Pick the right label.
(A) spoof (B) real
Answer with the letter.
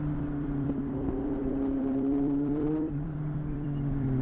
A